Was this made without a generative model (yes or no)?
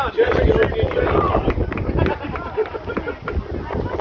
yes